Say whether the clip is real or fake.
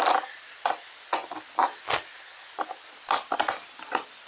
real